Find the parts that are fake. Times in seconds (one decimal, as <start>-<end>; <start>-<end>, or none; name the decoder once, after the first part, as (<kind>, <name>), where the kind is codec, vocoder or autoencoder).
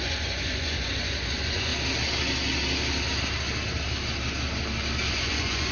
0.0-1.7 (vocoder, Vocos); 5.1-5.7